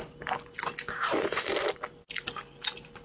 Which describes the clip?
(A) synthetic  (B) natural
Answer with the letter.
B